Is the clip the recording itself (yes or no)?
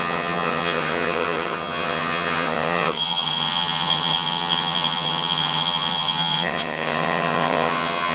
no